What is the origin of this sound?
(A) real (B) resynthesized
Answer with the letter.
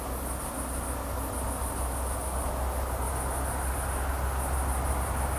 A